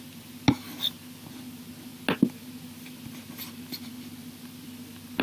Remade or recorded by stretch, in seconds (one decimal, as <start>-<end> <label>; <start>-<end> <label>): 0.0-5.2 recorded

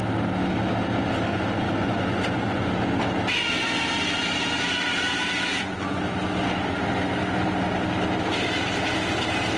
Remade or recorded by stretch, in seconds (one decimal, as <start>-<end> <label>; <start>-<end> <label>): 0.0-1.3 recorded; 1.3-2.7 remade; 2.7-5.5 recorded; 5.5-6.0 remade; 6.0-9.6 recorded

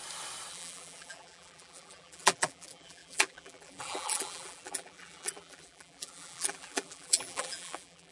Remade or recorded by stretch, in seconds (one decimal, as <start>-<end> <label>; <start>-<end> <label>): 0.0-0.5 recorded; 0.5-8.1 remade

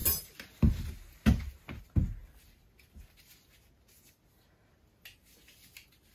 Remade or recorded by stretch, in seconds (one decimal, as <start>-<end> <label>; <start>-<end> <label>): 0.0-6.1 recorded

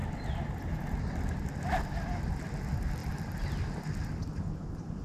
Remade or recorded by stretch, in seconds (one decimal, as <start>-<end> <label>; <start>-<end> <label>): 0.0-5.0 recorded

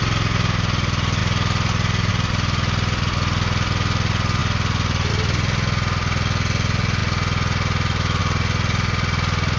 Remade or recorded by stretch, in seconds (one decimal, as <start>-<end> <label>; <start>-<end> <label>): 0.0-9.6 recorded

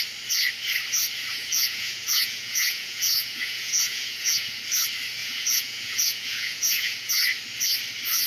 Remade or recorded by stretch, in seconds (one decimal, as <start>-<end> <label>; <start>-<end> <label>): 0.0-1.3 recorded; 1.3-4.6 remade; 4.6-5.2 recorded; 5.2-7.1 remade; 7.1-8.3 recorded